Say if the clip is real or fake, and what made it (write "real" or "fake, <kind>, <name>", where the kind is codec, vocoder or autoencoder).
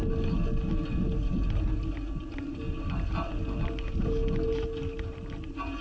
real